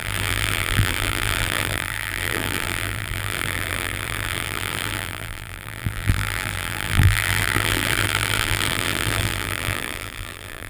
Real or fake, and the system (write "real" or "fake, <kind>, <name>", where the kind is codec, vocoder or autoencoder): fake, vocoder, BigVGAN v2